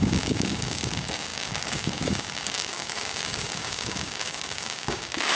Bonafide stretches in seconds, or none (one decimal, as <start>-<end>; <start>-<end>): none